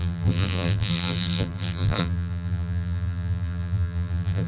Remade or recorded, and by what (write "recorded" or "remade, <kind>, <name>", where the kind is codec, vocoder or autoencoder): remade, vocoder, BigVGAN v2